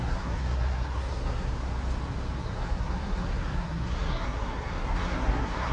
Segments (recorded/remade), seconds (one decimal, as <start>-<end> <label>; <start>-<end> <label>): 0.0-1.5 remade; 1.5-2.4 recorded; 2.4-5.7 remade